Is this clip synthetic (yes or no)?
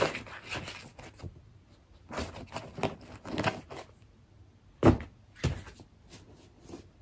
no